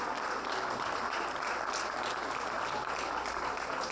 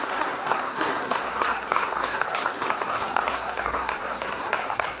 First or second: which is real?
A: first